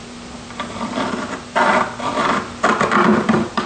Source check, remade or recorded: remade